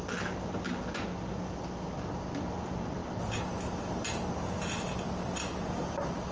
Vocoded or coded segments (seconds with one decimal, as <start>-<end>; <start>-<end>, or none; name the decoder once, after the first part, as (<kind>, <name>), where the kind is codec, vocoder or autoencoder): none